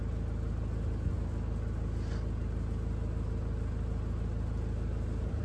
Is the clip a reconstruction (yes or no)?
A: no